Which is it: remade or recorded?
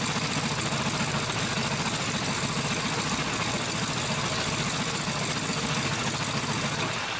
recorded